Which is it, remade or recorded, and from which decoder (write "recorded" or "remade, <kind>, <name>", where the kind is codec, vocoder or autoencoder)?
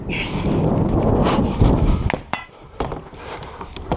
recorded